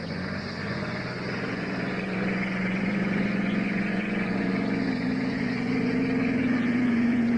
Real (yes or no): no